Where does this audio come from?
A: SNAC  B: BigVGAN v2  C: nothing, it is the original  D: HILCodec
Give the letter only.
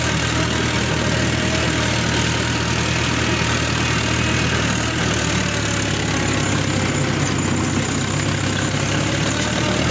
C